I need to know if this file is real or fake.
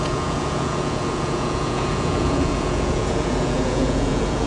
fake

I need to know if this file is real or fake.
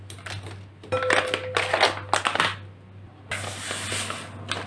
real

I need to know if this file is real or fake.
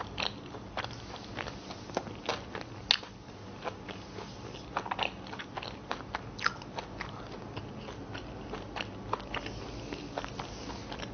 real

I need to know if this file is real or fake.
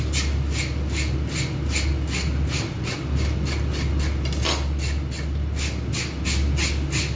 real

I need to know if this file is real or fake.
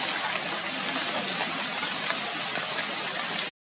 real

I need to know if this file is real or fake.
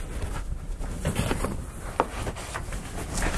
real